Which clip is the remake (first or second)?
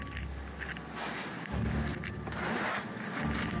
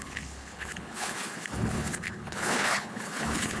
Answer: second